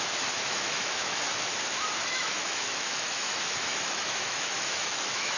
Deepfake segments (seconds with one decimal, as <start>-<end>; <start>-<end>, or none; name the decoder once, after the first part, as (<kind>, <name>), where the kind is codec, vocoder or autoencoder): 0.0-1.5 (autoencoder, DAC-VAE); 2.1-5.4

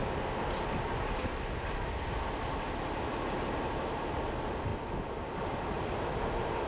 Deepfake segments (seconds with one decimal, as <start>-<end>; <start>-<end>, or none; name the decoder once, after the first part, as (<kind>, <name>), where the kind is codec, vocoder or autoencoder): none